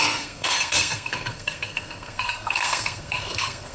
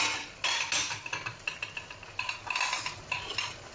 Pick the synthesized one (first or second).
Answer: first